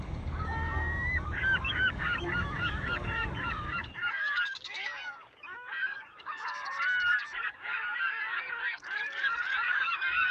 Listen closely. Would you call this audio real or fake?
fake